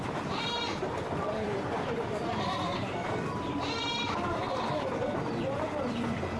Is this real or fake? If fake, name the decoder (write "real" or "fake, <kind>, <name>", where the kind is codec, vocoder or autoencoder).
fake, vocoder, BigVGAN v2